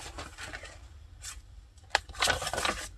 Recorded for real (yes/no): yes